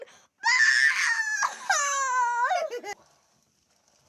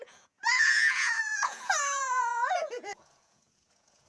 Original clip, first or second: first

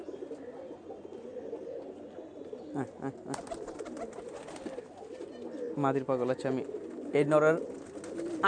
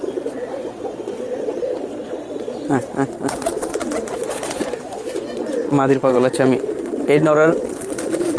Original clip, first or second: first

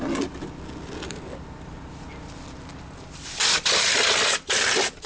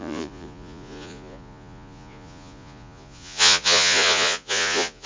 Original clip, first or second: first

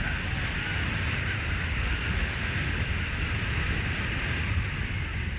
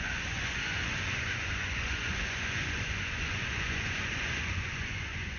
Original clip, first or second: first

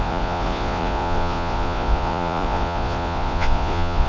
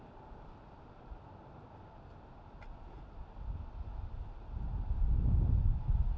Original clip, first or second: second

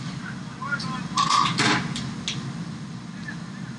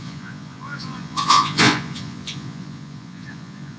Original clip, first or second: first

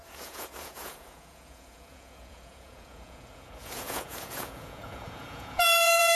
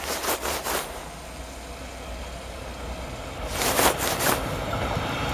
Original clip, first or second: second